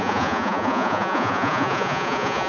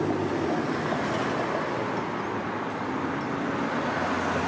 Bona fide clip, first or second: second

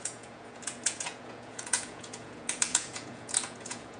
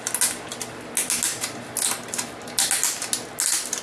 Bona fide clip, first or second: second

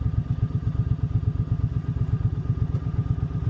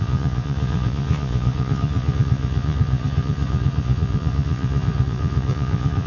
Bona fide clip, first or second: first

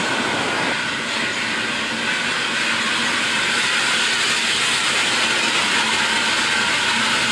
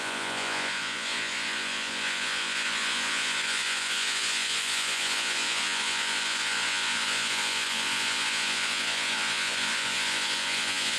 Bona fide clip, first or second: first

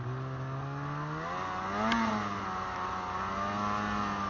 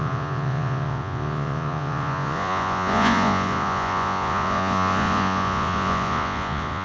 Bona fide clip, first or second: first